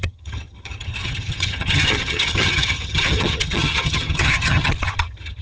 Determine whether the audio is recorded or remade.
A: remade